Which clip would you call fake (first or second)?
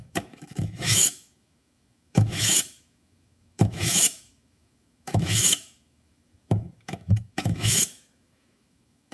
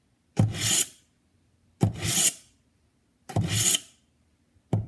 first